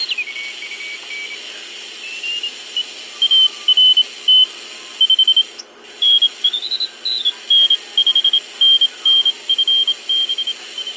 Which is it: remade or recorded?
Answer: recorded